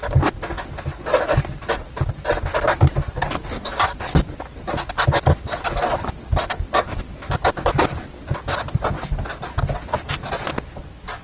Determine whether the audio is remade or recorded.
recorded